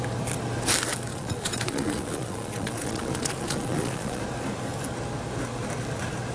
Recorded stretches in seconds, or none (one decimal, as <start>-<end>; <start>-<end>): 0.0-1.1; 4.2-6.3